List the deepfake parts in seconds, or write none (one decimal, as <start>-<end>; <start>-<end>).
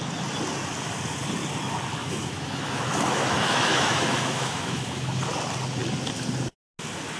2.0-5.2